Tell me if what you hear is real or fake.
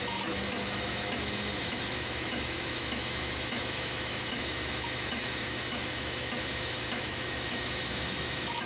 fake